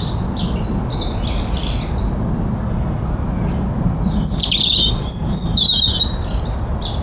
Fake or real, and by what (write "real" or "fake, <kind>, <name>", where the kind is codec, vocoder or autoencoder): real